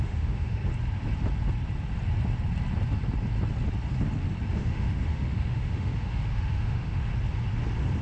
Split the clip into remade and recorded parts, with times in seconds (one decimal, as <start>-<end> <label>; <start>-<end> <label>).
0.0-0.6 remade; 0.6-4.5 recorded; 4.5-7.1 remade; 7.1-8.0 recorded